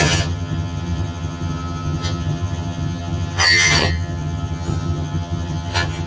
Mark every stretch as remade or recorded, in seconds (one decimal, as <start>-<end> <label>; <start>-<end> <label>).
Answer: 0.0-6.1 remade